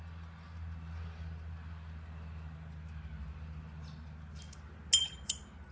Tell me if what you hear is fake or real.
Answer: real